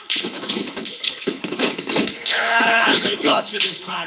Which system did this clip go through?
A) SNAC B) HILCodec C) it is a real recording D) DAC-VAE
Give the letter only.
B